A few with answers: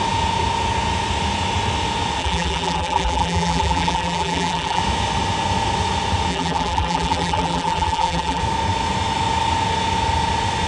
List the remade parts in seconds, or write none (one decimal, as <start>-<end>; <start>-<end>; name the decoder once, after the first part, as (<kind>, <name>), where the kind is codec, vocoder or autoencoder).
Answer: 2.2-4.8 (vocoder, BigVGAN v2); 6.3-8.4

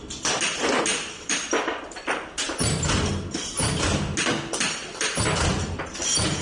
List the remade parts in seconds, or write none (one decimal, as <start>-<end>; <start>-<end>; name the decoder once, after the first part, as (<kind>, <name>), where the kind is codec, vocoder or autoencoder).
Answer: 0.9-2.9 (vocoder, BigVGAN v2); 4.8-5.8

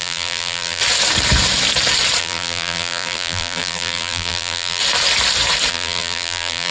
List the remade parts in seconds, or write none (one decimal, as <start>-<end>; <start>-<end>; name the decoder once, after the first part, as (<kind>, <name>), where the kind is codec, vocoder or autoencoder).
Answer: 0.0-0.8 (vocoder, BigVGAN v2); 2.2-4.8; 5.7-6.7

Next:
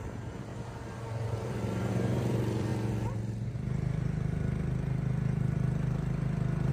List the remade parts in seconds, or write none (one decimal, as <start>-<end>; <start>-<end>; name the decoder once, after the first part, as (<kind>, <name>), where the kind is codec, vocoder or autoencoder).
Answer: 0.0-2.7 (vocoder, BigVGAN v2)